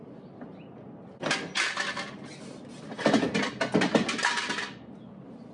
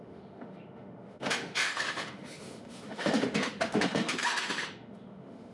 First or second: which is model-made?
second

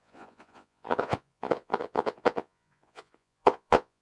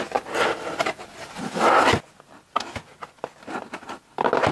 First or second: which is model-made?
first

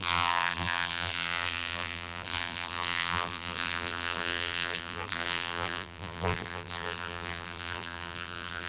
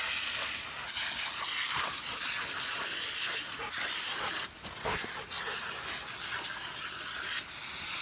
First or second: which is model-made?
first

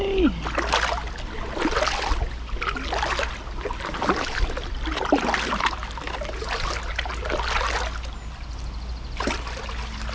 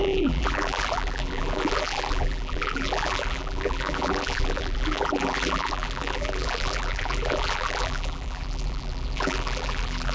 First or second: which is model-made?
second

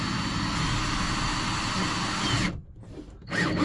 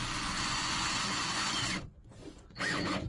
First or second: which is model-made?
second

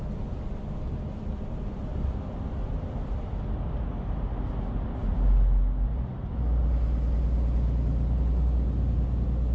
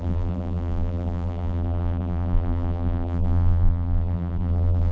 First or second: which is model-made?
second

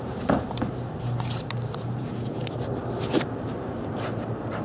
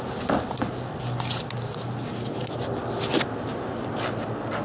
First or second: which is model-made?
first